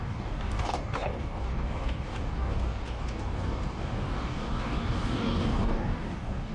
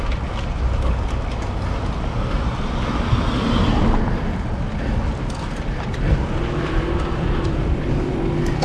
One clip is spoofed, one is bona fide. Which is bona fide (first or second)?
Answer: second